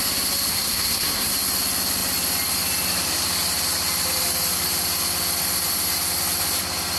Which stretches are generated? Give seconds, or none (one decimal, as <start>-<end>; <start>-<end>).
0.5-1.3